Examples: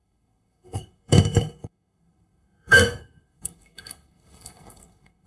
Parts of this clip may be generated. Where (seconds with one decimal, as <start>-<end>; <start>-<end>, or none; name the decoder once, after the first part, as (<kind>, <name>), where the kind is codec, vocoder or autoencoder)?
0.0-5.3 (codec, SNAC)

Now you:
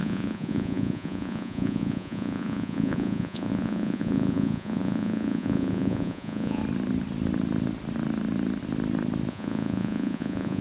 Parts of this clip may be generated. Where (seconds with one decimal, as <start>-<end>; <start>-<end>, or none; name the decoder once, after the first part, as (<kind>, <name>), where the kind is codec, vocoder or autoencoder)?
0.0-6.6 (vocoder, Vocos); 9.3-10.6

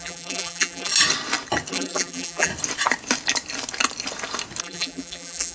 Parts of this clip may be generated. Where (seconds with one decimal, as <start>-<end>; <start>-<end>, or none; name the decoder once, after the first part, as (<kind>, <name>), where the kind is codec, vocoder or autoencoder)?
0.0-0.9 (vocoder, BigVGAN v2); 1.7-2.5; 4.6-5.5

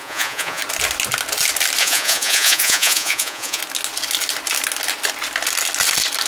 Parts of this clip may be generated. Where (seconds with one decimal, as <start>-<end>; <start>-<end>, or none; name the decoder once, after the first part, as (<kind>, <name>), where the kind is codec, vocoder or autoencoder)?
0.0-0.6 (vocoder, Vocos); 1.8-3.6